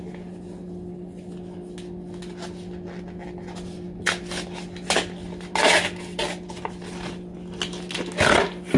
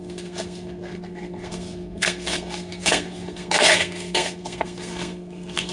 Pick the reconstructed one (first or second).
second